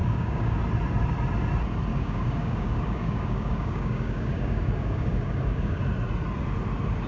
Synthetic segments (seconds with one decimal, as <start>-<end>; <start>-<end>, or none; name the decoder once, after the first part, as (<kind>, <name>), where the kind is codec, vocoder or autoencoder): 0.0-0.6 (codec, DAC); 1.9-5.8